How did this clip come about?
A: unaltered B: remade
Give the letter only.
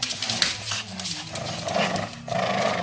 A